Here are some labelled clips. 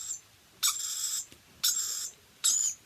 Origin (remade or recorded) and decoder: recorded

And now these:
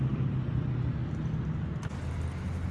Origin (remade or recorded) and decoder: recorded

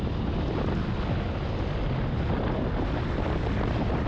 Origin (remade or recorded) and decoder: recorded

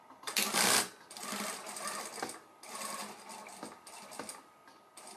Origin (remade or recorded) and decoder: recorded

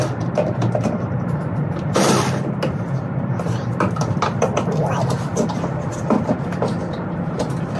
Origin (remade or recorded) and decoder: remade, vocoder, BigVGAN v2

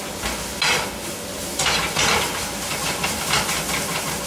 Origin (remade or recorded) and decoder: recorded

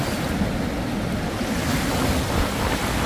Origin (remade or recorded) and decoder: recorded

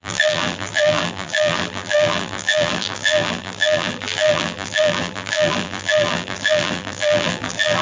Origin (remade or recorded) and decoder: remade, vocoder, BigVGAN v2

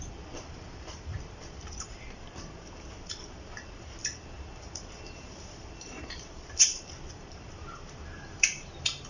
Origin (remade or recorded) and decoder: remade, vocoder, BigVGAN v2